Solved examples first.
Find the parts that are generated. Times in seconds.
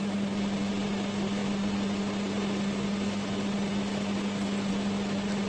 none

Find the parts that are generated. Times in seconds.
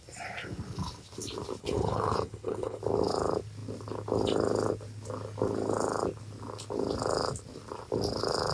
1.6-2.8 (codec, HILCodec)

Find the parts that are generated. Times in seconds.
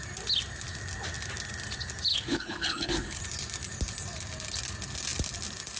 2.1-3.2 (codec, HILCodec)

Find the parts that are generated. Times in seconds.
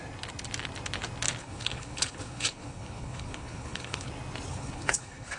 1.4-4.1 (codec, HILCodec); 4.5-5.4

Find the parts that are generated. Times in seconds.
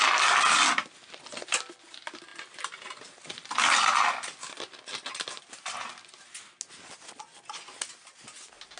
none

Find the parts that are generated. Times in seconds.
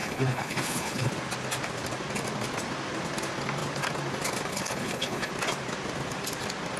0.0-1.1 (codec, HILCodec); 4.5-5.3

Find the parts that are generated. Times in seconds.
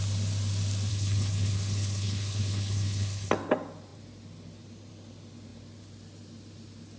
0.9-3.3 (codec, HILCodec)